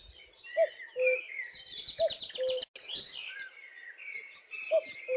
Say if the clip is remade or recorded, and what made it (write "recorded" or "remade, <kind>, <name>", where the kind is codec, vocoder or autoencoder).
recorded